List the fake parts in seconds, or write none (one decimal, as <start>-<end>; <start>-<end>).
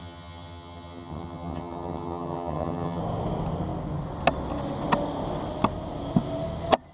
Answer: 0.0-3.0